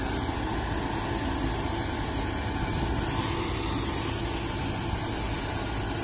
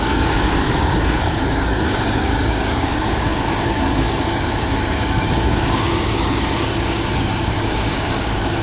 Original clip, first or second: first